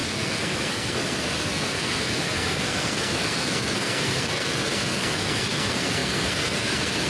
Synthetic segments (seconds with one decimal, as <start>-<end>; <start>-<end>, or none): 0.0-7.1